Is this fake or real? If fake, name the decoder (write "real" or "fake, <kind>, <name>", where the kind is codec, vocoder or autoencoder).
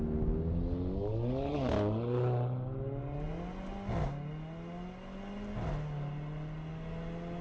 real